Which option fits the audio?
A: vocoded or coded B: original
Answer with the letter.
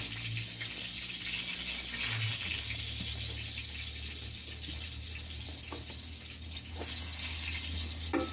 B